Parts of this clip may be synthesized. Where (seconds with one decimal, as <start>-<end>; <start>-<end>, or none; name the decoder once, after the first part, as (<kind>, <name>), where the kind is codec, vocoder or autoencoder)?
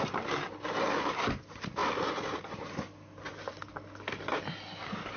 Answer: none